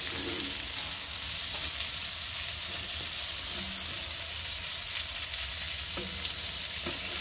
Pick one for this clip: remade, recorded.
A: recorded